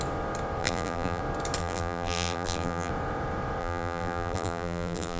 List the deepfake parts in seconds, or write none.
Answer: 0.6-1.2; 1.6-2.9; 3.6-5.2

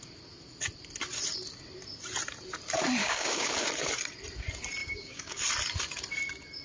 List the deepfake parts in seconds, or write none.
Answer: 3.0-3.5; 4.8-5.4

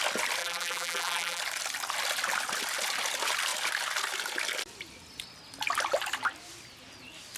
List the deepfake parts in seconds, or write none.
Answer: 0.4-1.4

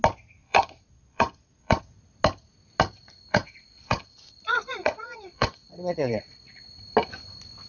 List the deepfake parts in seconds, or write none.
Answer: 0.4-1.8; 3.3-6.6

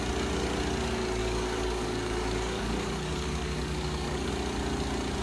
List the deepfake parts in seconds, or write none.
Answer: 1.2-4.3